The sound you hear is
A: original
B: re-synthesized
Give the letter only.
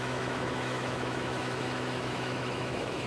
B